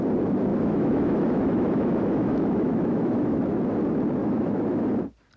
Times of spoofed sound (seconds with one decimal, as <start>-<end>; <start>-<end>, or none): 0.5-3.4; 4.2-4.9